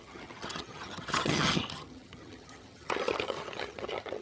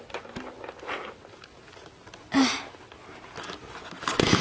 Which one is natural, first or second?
second